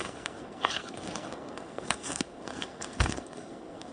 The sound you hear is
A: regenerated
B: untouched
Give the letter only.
A